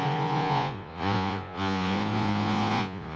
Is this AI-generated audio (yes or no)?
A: yes